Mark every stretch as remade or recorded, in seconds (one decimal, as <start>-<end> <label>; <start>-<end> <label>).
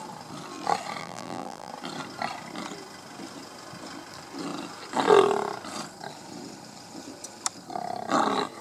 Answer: 0.0-1.0 recorded; 1.0-1.7 remade; 1.7-8.6 recorded